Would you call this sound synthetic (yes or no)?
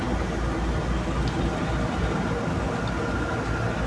no